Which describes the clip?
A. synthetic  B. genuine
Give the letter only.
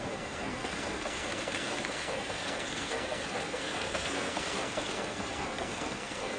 A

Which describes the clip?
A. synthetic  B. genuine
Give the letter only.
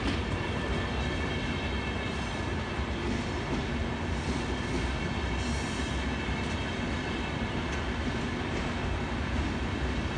B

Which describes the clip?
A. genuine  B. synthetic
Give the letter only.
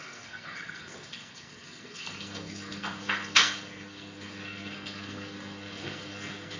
B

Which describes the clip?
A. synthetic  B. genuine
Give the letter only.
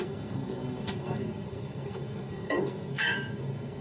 A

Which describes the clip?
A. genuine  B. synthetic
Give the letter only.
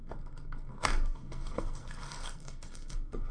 B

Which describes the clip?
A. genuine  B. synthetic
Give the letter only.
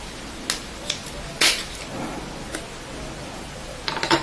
A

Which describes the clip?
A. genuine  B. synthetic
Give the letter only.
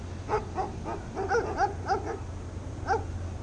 A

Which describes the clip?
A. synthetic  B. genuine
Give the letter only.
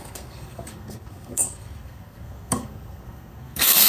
A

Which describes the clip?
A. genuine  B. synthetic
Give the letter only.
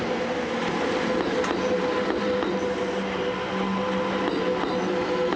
A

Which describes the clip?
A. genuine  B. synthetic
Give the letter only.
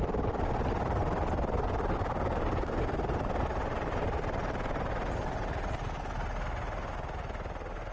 A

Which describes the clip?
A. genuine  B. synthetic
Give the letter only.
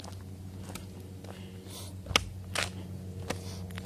A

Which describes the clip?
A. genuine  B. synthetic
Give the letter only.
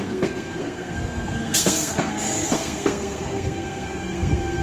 B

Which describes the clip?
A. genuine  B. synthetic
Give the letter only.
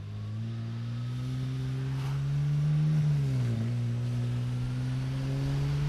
A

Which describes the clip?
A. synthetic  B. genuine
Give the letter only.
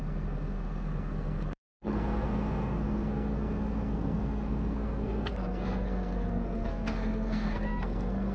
A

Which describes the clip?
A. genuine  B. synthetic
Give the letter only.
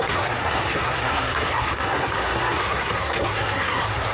B